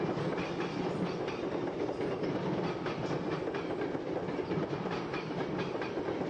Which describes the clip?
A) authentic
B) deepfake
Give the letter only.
A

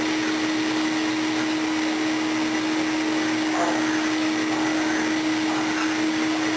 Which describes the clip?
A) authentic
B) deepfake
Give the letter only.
A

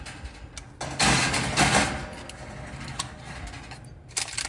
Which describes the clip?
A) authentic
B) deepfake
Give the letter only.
A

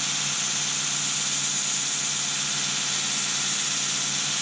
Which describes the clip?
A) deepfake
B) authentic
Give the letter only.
B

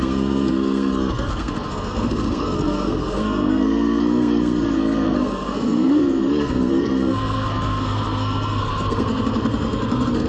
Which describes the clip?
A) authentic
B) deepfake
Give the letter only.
B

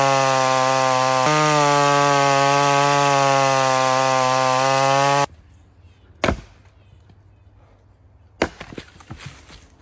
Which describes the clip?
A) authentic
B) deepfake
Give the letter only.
A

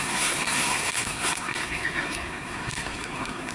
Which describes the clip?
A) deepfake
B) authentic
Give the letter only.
A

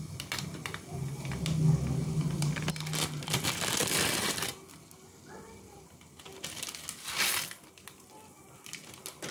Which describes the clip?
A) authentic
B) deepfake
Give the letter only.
A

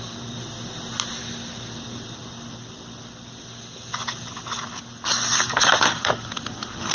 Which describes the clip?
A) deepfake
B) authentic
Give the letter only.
B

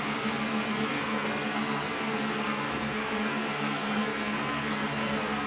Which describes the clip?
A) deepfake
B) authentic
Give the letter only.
A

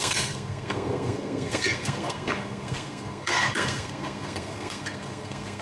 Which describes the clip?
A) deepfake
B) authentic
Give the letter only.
A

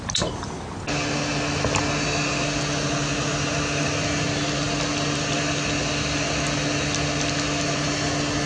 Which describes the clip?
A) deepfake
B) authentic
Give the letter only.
B